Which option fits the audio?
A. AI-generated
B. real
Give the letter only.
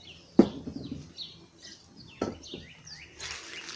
B